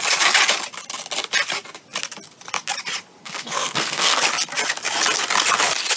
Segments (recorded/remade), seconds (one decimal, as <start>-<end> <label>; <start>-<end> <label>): 0.0-3.2 recorded; 3.2-4.2 remade; 4.2-6.0 recorded